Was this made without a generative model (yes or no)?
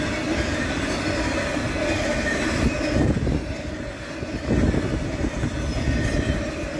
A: yes